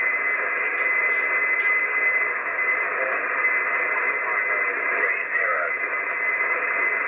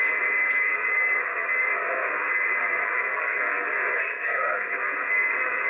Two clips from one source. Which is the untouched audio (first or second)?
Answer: first